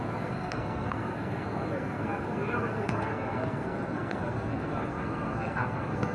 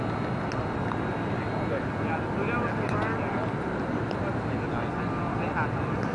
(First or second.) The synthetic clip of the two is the first